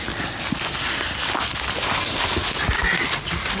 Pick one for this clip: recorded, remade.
recorded